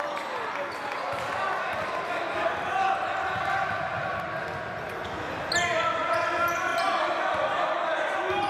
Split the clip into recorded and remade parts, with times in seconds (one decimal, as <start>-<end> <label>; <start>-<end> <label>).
0.0-8.5 recorded